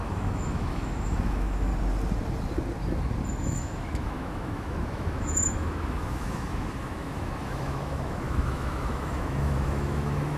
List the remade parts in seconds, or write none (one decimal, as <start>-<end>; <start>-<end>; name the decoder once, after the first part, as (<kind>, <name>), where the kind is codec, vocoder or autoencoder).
0.0-1.7 (autoencoder, DAC-VAE); 3.4-10.4